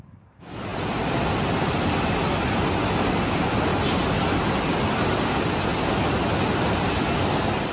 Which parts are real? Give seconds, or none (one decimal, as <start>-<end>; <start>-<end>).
0.0-7.7